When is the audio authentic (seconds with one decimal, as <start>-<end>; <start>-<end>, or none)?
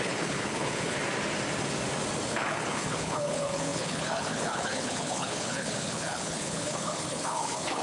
1.0-2.3